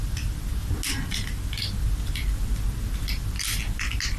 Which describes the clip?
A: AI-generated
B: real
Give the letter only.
B